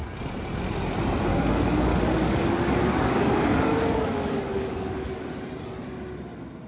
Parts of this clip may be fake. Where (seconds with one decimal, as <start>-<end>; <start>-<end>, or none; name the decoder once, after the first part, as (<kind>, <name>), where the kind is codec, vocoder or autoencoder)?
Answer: 1.3-5.3 (codec, DAC)